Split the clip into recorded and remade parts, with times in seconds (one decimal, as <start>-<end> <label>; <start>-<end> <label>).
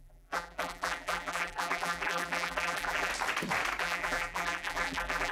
0.0-3.1 remade; 3.1-3.8 recorded; 3.8-5.3 remade